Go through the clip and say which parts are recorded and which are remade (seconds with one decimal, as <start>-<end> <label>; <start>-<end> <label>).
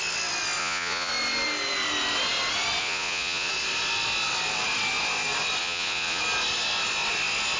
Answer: 0.0-0.6 recorded; 0.6-1.1 remade; 1.1-2.8 recorded; 2.8-3.5 remade; 3.5-5.6 recorded; 5.6-6.2 remade; 6.2-7.6 recorded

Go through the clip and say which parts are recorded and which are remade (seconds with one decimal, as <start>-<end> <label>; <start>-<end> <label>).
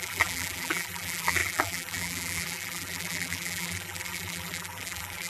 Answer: 0.0-5.3 remade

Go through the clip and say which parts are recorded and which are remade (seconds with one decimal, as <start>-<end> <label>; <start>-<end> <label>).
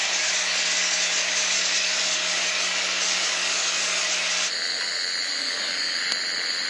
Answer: 0.0-4.0 remade; 4.0-5.4 recorded; 5.4-6.0 remade; 6.0-6.7 recorded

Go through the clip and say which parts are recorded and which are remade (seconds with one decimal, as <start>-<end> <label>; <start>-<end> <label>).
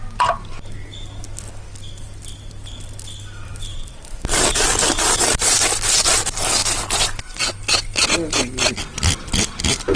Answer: 0.0-3.7 recorded; 3.7-5.6 remade; 5.6-10.0 recorded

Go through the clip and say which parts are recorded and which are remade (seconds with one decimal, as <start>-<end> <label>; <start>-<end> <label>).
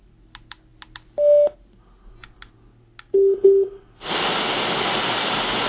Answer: 0.0-5.7 recorded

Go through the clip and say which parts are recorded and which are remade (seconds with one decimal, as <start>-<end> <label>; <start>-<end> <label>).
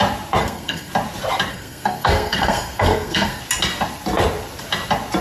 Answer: 0.0-0.4 recorded; 0.4-0.9 remade; 0.9-1.5 recorded; 1.5-3.4 remade; 3.4-5.2 recorded